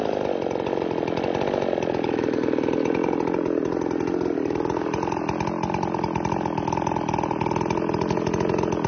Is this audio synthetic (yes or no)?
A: no